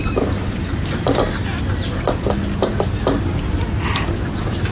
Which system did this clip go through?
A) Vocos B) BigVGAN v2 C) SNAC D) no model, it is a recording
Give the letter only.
D